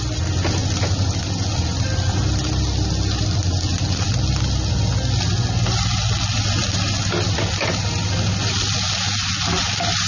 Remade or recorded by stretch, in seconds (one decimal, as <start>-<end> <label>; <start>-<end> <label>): 0.0-10.1 recorded